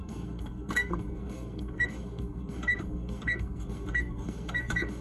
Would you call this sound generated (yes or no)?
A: yes